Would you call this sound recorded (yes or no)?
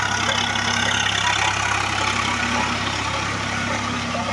yes